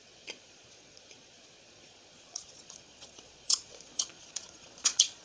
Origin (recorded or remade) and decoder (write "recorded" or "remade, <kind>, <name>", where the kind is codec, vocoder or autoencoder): remade, vocoder, Vocos